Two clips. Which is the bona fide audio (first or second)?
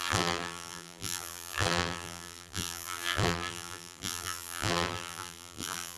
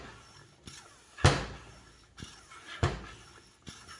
second